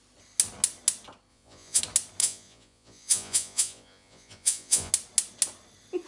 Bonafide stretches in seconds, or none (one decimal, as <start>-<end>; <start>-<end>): 0.0-1.3; 1.8-2.2; 4.9-6.1